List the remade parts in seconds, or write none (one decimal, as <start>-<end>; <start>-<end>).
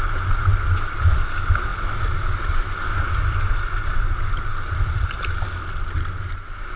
none